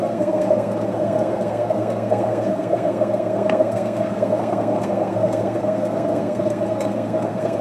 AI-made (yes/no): yes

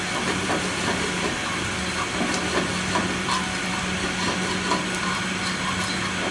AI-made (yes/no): no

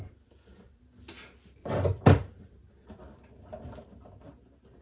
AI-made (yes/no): no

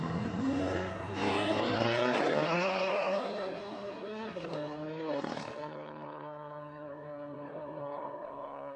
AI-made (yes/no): yes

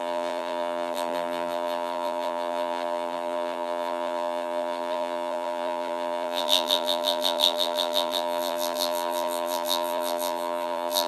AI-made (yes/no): yes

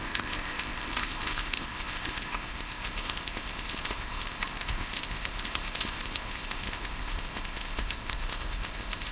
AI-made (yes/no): yes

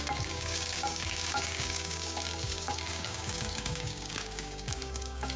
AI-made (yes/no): yes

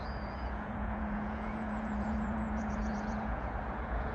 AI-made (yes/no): yes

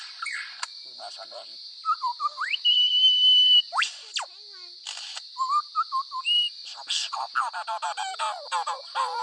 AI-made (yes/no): no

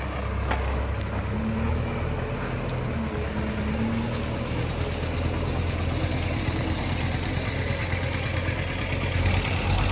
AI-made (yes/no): no